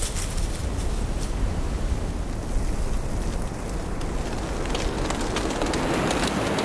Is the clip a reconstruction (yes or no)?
no